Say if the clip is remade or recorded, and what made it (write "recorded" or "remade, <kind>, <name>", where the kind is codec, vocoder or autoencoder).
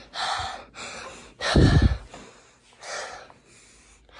recorded